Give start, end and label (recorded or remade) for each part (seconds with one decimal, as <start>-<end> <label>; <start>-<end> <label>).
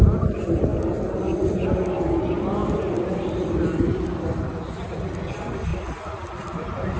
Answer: 0.0-2.6 recorded; 2.6-4.4 remade; 4.4-7.0 recorded